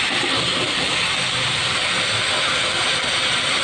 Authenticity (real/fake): real